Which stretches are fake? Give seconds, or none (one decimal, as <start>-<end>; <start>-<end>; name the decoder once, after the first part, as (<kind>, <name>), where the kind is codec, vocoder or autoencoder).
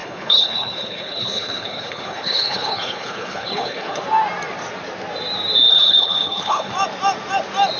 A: 0.0-4.0 (codec, HILCodec); 5.7-6.7